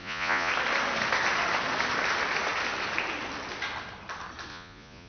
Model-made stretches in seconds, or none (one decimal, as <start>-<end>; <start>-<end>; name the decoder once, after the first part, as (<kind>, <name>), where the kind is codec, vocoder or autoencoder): 0.0-0.5 (vocoder, Vocos); 4.5-5.1